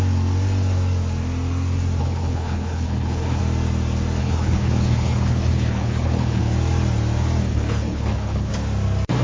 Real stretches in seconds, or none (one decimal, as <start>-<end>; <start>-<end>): 0.0-2.0; 3.4-4.2; 6.4-7.4; 8.5-9.2